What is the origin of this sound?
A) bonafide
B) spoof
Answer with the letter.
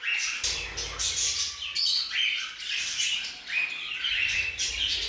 A